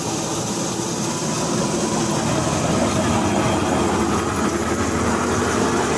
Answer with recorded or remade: recorded